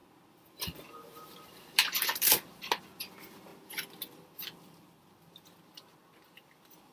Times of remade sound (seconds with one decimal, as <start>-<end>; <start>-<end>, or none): 0.9-3.5; 4.2-6.9